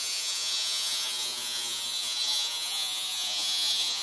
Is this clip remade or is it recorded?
remade